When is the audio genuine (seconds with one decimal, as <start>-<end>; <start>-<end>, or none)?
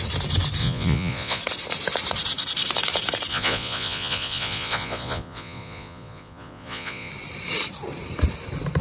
0.0-0.6; 1.4-3.3; 7.1-8.8